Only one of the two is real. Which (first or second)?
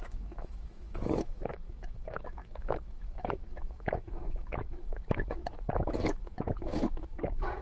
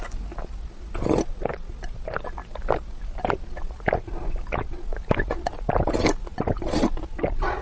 second